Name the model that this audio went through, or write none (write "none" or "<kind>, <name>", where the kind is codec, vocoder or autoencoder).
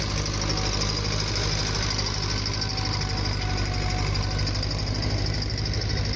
none